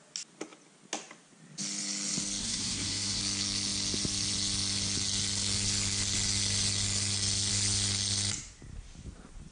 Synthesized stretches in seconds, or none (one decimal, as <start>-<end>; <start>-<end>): 2.4-3.2